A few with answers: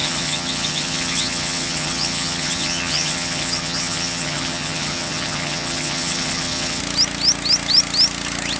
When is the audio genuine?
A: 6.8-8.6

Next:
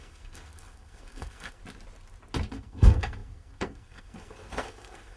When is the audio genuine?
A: 1.6-2.5

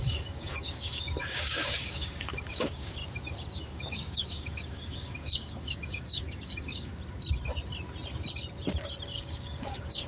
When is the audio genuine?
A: 3.0-3.7; 6.9-9.2